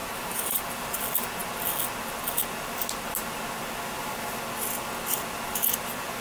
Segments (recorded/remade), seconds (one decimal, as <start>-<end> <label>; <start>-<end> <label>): 0.0-0.7 remade; 0.7-6.2 recorded